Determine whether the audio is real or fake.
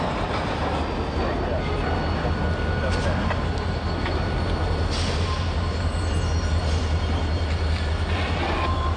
real